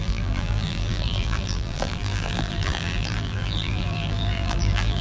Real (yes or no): no